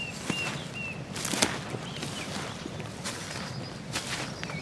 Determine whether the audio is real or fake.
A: real